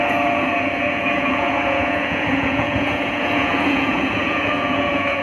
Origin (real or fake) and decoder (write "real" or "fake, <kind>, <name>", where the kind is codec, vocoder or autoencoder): fake, vocoder, Vocos